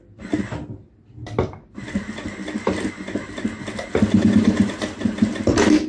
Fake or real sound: real